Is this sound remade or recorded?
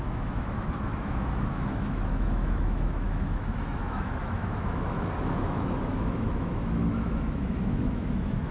remade